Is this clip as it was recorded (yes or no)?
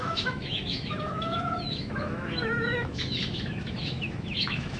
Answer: no